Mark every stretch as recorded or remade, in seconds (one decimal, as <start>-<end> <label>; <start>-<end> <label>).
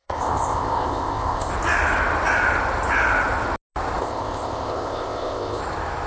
0.0-1.5 remade; 1.5-4.0 recorded; 4.0-5.6 remade; 5.6-6.1 recorded